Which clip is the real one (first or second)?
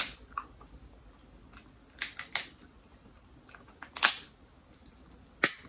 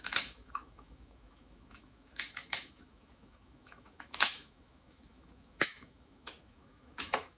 first